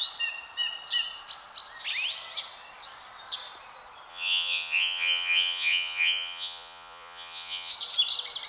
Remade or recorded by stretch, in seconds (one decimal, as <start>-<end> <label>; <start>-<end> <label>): 0.0-4.1 recorded; 4.1-7.7 remade; 7.7-8.5 recorded